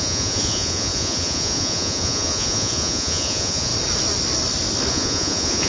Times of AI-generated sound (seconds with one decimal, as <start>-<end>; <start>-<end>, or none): 0.0-3.7; 4.9-5.7

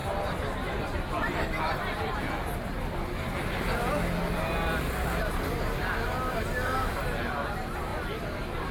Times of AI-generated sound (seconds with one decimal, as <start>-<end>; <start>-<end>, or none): none

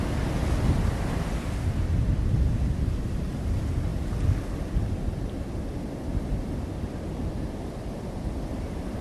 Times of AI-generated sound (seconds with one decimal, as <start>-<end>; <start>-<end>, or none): 0.4-2.7